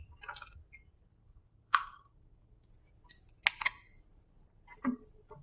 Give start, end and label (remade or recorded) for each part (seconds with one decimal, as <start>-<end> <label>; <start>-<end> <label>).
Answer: 0.0-1.2 recorded; 1.2-2.7 remade; 2.7-5.4 recorded